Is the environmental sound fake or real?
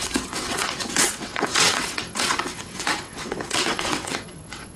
fake